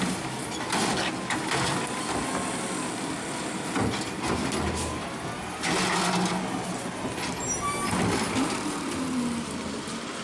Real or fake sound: real